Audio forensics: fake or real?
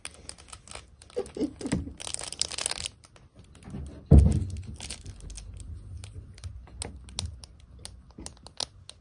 real